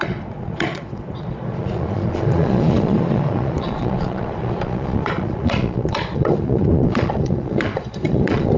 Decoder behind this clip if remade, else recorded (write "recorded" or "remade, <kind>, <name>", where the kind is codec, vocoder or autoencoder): remade, vocoder, Vocos